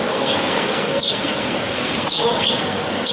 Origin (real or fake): fake